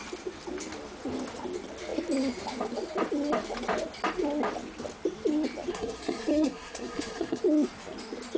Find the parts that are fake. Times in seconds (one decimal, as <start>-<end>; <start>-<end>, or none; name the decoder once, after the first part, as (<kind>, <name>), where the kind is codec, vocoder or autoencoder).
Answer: 5.7-7.4 (codec, SNAC)